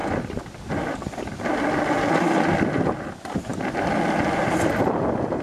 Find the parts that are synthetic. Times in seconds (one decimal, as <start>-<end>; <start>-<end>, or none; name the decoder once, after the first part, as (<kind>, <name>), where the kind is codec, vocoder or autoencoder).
none